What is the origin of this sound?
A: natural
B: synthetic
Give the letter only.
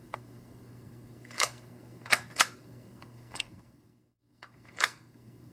B